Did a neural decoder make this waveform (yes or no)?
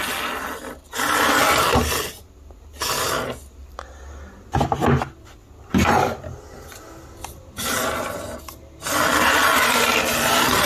no